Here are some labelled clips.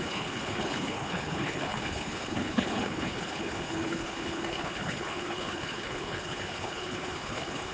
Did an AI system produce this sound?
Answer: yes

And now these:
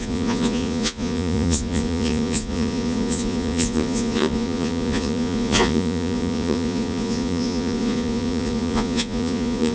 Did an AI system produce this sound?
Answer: yes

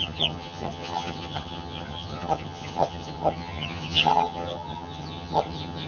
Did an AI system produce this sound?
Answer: yes